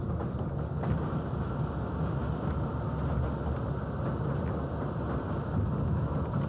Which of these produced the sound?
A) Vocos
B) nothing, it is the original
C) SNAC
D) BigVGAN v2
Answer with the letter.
B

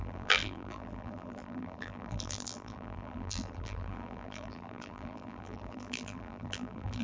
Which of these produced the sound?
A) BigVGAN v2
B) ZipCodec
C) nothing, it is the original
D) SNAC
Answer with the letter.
A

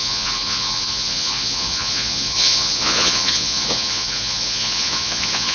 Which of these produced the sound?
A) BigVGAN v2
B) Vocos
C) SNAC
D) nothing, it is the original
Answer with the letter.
B